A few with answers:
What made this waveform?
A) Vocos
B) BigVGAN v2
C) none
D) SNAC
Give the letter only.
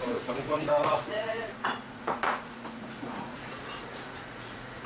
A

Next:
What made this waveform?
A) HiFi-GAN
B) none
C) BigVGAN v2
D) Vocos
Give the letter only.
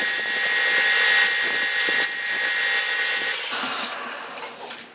B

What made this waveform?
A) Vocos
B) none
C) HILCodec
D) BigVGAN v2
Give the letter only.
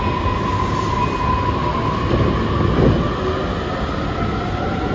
B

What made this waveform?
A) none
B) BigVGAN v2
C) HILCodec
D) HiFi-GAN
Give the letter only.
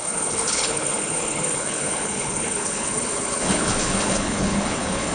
C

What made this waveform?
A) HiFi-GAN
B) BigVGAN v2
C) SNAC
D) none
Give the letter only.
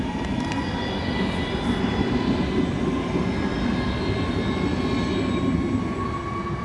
D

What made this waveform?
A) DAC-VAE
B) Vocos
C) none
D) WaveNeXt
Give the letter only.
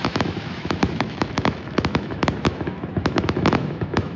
A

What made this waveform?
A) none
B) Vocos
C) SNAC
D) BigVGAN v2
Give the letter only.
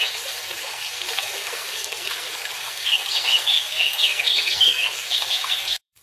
C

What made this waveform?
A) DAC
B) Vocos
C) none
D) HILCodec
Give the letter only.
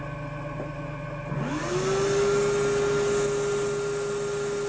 C